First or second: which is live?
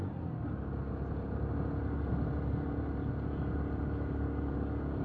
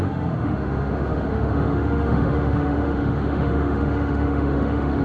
first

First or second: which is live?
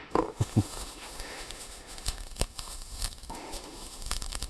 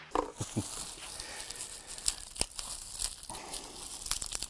second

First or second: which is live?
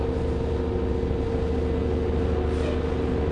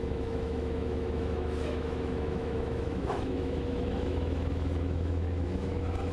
first